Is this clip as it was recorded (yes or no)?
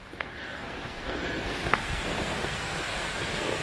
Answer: no